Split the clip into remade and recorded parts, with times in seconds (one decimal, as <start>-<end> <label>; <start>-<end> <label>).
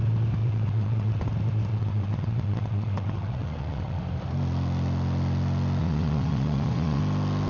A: 0.0-0.4 recorded; 0.4-1.2 remade; 1.2-1.7 recorded; 1.7-4.0 remade; 4.0-5.8 recorded; 5.8-7.0 remade; 7.0-7.5 recorded